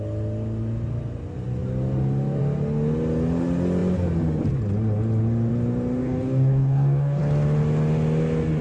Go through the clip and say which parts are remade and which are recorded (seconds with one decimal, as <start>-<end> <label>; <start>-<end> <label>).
0.0-6.0 recorded; 6.0-7.2 remade; 7.2-8.6 recorded